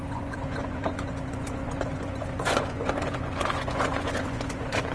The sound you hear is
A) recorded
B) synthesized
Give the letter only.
B